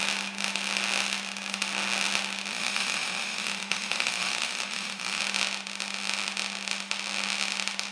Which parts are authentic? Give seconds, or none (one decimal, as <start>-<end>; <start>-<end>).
0.0-2.5; 5.2-7.9

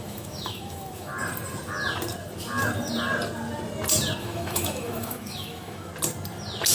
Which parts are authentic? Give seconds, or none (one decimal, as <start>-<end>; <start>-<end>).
1.1-4.2; 5.9-6.7

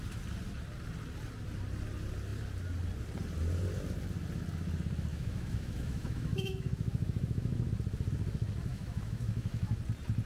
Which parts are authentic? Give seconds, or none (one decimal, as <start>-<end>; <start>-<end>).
0.0-5.1; 7.7-8.7; 9.7-10.3

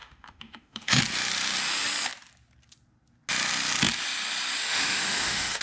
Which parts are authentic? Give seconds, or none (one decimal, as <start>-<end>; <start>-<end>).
1.0-4.6

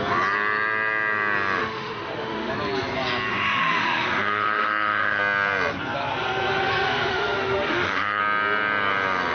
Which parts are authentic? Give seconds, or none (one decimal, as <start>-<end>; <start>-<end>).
0.0-1.6; 2.5-3.3; 5.2-7.1; 8.2-9.3

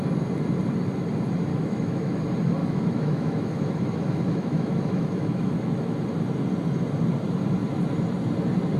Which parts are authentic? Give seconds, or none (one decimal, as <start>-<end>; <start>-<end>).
0.0-1.5; 2.2-2.6; 6.0-8.8

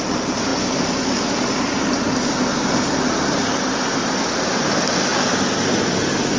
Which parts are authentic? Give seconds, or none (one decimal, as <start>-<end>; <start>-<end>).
0.0-6.4